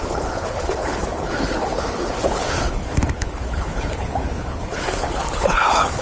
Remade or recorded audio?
remade